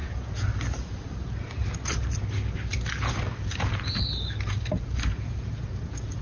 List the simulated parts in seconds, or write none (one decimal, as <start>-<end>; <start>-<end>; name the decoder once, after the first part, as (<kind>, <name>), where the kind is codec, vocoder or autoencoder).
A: 0.0-0.5 (vocoder, Vocos); 5.1-6.2

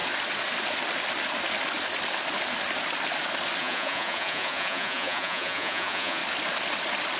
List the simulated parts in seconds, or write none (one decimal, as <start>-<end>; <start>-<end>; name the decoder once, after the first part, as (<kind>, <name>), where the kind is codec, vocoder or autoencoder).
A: 3.6-6.2 (vocoder, Vocos)

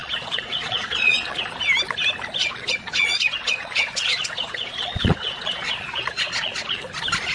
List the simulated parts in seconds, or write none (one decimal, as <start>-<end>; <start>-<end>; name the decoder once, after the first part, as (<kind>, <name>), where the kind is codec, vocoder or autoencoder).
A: 0.0-1.4 (vocoder, Vocos); 2.4-6.8

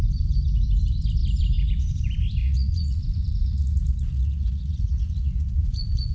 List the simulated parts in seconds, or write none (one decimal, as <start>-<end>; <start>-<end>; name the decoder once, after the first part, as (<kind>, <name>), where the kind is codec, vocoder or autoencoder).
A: 2.4-6.1 (vocoder, Vocos)